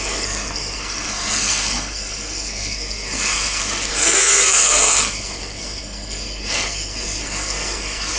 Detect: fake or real fake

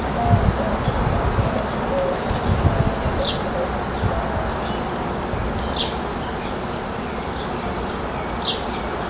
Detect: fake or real real